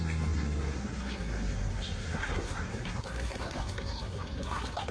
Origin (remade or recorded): remade